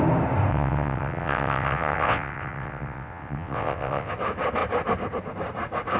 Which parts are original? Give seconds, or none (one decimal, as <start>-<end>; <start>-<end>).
0.0-0.5; 4.1-6.0